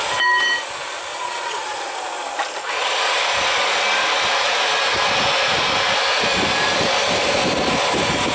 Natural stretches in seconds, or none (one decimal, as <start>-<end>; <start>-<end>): 0.0-1.1; 1.6-8.3